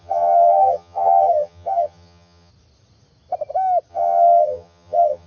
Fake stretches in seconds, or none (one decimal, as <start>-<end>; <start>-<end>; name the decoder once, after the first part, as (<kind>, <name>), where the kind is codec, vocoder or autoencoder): 0.0-2.5 (vocoder, HiFi-GAN); 3.9-5.3